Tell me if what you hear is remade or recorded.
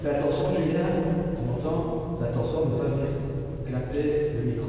recorded